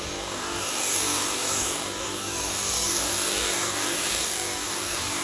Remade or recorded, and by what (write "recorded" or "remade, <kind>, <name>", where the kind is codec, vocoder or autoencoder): remade, codec, DAC